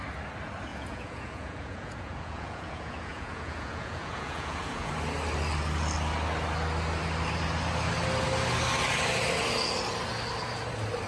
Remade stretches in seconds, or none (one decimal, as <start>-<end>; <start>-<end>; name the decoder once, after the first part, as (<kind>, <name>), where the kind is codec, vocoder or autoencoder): 0.7-4.9 (vocoder, Vocos)

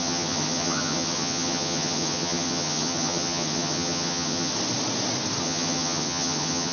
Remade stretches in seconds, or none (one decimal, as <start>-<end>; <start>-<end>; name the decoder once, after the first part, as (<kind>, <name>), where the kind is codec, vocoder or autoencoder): 0.0-4.5 (vocoder, HiFi-GAN); 5.4-6.7